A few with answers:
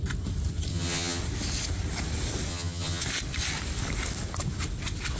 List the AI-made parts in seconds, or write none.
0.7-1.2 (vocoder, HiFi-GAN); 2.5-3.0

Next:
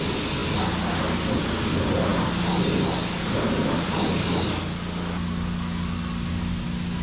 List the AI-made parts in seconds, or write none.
none

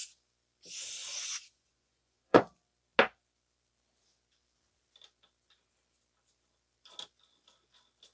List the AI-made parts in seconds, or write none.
1.0-2.4 (vocoder, Vocos)

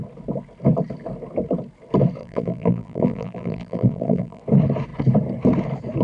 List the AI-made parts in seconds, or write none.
2.2-4.4 (vocoder, BigVGAN v2)

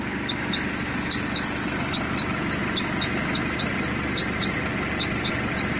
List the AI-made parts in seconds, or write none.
none

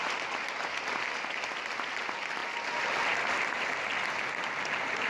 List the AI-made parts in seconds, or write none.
none

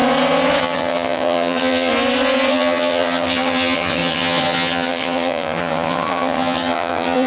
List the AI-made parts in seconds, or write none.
0.6-1.9 (vocoder, HiFi-GAN); 2.5-7.3